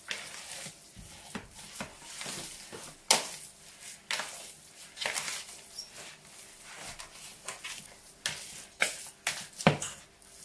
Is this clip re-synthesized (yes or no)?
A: no